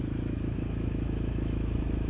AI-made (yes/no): yes